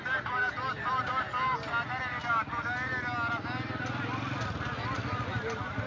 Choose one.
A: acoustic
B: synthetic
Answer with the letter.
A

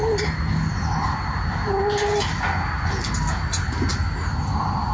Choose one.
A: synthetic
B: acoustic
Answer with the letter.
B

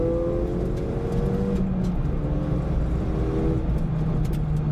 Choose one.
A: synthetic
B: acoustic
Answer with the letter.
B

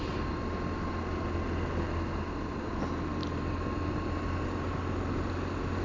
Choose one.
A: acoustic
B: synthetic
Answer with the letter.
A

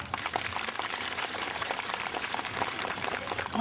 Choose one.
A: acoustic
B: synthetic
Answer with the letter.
B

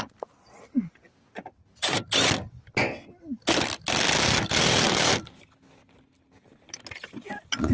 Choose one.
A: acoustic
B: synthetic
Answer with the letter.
A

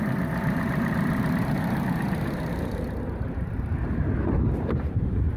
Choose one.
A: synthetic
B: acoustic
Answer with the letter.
A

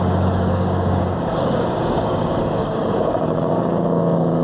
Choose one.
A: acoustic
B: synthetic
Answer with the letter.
B